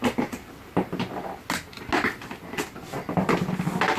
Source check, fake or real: real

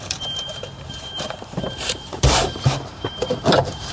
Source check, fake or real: fake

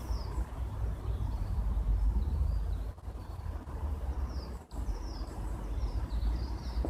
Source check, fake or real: fake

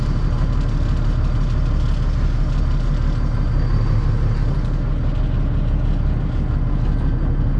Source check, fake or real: real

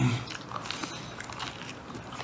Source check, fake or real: fake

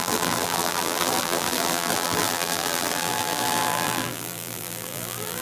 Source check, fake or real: fake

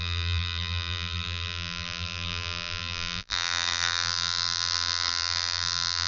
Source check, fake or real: fake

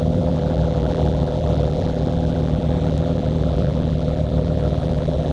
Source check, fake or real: fake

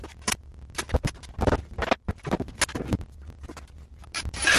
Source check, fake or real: real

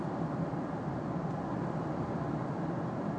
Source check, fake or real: fake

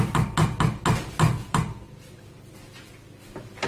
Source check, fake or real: real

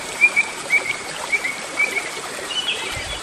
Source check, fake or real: fake